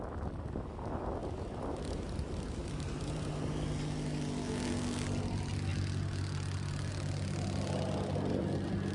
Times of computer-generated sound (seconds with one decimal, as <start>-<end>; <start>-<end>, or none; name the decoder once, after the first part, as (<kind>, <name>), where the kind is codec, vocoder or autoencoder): 1.2-3.3 (vocoder, BigVGAN v2)